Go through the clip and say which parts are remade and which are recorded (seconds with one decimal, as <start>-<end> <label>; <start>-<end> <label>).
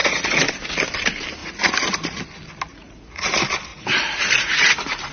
0.0-0.5 remade; 0.5-1.4 recorded; 1.4-2.2 remade; 2.2-2.7 recorded; 2.7-3.3 remade; 3.3-3.7 recorded; 3.7-5.1 remade